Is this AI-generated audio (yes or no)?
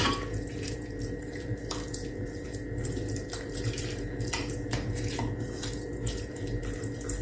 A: yes